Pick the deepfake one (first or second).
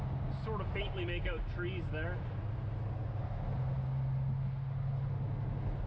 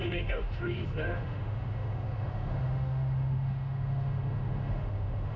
second